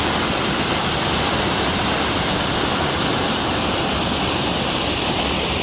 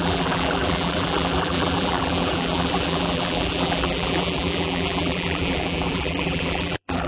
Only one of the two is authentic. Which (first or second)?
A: first